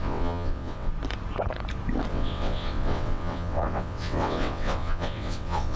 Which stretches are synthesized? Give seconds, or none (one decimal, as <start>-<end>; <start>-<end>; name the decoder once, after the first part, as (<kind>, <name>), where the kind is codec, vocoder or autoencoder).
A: 0.0-0.9 (vocoder, WaveNeXt); 2.1-5.8